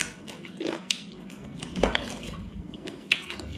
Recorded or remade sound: remade